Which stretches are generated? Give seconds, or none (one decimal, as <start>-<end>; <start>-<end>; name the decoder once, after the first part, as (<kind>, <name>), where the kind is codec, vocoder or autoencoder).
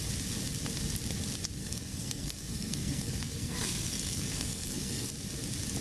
1.6-5.1 (codec, SNAC)